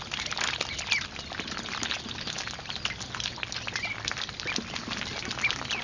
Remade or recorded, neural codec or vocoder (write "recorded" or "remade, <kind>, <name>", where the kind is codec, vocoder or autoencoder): recorded